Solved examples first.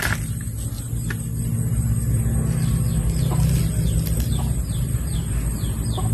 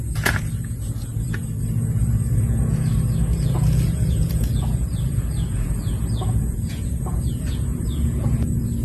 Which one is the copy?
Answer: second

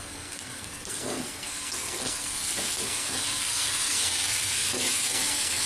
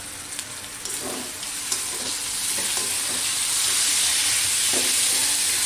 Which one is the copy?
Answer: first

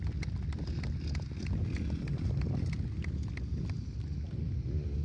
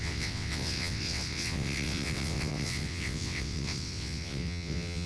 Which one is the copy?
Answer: second